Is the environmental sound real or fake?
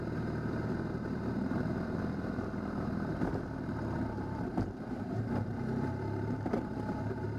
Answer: fake